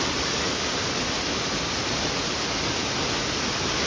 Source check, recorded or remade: recorded